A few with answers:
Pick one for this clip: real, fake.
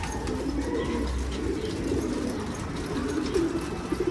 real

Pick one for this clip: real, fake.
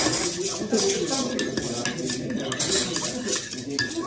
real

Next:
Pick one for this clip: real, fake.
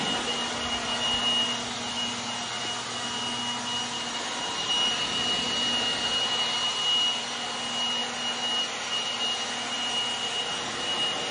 real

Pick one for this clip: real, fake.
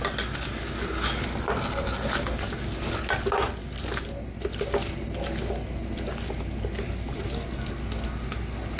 real